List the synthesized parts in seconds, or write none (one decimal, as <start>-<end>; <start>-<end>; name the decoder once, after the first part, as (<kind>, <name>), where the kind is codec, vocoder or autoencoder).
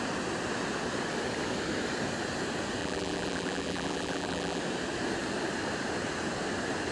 2.8-4.6 (vocoder, BigVGAN v2)